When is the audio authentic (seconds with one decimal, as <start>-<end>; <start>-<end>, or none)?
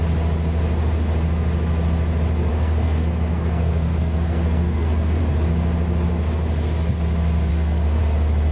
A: 0.0-2.5; 5.2-7.5; 8.0-8.5